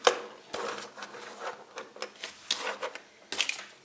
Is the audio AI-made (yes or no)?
no